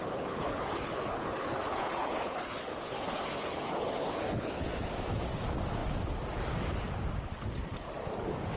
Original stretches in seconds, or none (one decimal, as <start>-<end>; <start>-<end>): 4.7-8.6